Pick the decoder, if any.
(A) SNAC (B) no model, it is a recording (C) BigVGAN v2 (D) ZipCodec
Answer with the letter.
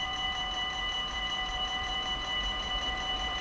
C